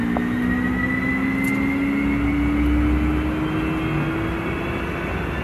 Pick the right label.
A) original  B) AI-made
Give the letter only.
A